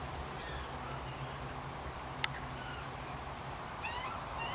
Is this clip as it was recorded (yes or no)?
yes